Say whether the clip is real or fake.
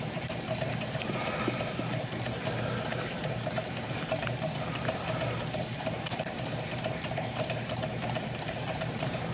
fake